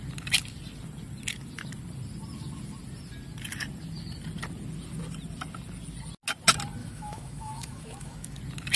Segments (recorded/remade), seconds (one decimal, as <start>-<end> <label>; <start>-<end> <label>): 0.0-6.8 recorded; 6.8-8.4 remade; 8.4-8.8 recorded